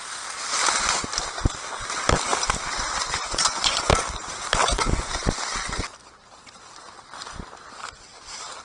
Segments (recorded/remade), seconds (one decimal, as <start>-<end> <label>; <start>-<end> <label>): 0.0-3.0 recorded; 3.0-3.9 remade; 3.9-4.6 recorded; 4.6-5.2 remade; 5.2-8.6 recorded